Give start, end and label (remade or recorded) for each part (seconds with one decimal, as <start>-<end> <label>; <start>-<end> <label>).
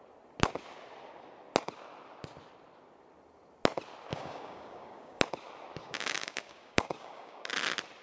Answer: 0.0-4.1 recorded; 4.1-5.2 remade; 5.2-5.8 recorded; 5.8-7.5 remade; 7.5-8.0 recorded